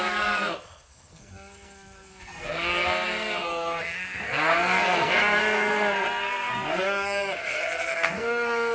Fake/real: fake